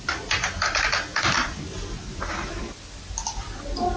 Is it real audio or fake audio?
real